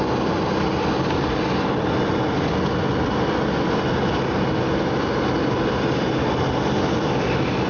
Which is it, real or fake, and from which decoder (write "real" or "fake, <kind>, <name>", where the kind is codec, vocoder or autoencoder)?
real